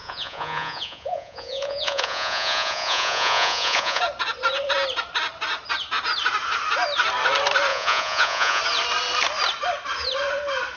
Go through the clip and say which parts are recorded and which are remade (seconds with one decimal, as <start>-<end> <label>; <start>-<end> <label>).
0.0-4.0 remade; 4.0-7.7 recorded; 7.7-8.6 remade; 8.6-10.8 recorded